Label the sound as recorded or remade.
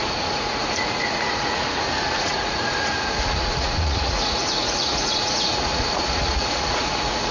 remade